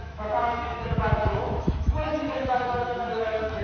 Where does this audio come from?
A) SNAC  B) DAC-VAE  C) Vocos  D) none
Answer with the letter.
B